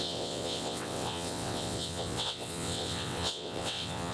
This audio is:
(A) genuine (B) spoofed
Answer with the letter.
B